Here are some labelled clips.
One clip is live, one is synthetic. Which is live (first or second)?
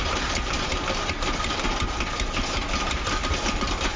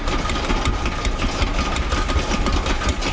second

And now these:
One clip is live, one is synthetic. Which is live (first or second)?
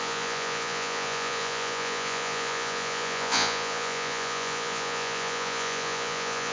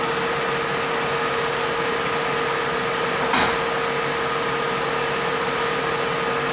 second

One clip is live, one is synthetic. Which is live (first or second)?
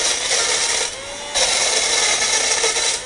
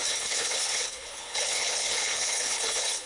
first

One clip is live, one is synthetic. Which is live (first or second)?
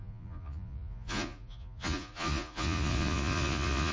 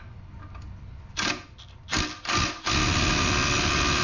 second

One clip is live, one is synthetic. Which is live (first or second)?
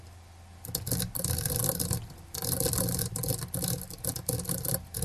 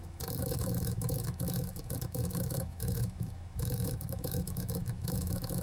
first